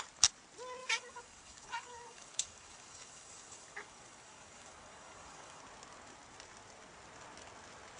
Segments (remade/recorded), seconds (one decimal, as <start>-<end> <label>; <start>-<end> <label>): 0.0-0.8 recorded; 0.8-5.6 remade; 5.6-8.0 recorded